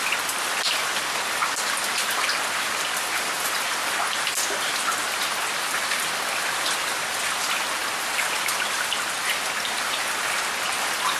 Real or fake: real